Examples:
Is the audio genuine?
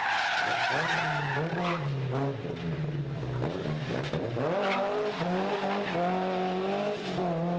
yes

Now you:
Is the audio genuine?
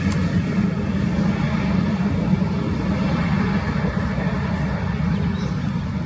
yes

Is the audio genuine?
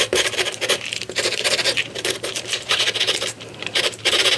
no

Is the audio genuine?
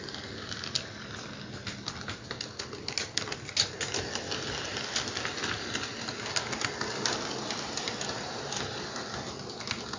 yes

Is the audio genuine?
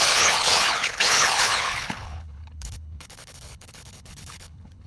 no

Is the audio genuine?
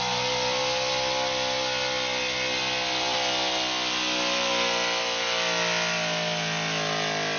yes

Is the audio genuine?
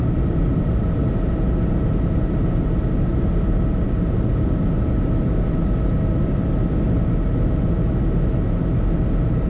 yes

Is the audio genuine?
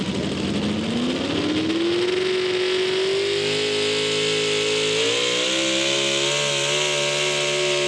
yes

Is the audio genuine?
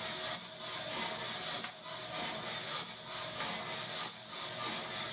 yes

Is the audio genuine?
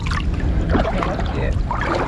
yes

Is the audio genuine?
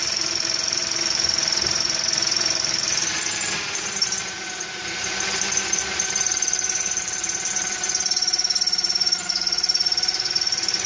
no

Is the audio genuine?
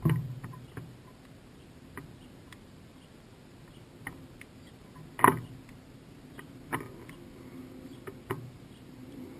yes